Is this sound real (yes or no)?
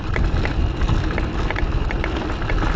yes